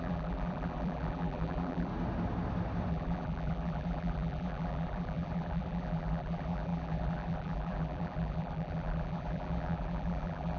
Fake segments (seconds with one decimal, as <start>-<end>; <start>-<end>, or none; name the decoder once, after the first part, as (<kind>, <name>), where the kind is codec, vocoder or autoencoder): 0.0-1.9 (vocoder, BigVGAN v2); 2.9-10.6